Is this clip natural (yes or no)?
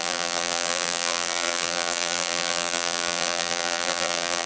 no